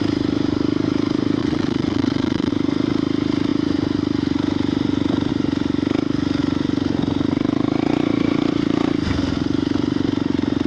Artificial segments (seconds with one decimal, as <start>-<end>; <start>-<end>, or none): 1.4-2.5